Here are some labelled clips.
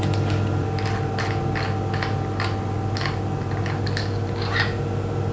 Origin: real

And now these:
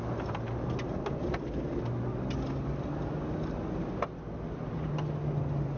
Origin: real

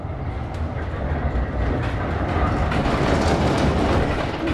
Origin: real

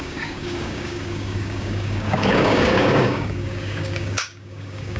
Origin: fake